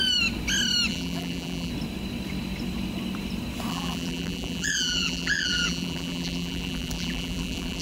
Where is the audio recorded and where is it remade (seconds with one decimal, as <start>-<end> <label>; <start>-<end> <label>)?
0.0-0.9 recorded; 0.9-1.7 remade; 1.7-3.7 recorded; 3.7-7.8 remade